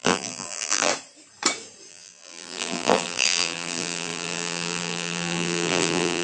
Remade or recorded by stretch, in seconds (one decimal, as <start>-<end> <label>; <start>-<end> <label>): 0.0-0.9 remade; 0.9-1.9 recorded; 1.9-6.2 remade